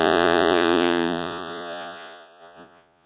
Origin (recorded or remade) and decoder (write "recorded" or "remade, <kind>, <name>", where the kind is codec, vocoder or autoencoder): remade, vocoder, Vocos